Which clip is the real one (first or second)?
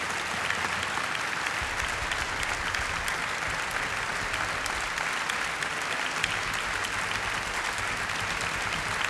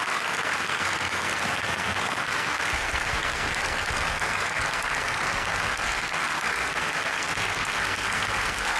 first